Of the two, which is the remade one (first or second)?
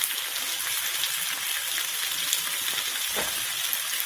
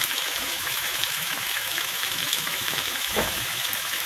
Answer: second